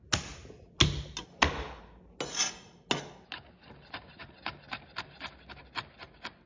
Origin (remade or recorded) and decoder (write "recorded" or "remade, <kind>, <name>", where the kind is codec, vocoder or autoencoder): recorded